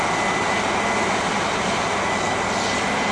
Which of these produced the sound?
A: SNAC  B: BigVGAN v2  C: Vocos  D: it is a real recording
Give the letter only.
D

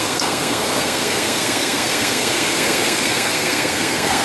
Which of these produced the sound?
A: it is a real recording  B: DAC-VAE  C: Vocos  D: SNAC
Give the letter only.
D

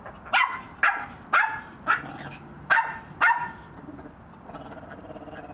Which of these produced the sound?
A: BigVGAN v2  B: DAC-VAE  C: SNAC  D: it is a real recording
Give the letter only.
D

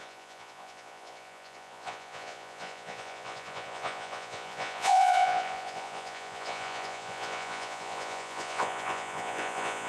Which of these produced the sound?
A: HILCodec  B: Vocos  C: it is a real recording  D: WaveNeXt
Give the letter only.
B